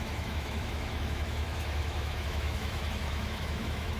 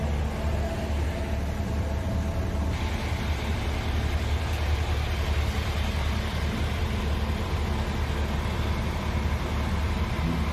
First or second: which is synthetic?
first